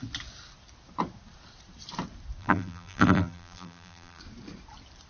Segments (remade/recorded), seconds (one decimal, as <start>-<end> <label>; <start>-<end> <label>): 0.0-2.4 recorded; 2.4-4.2 remade; 4.2-5.1 recorded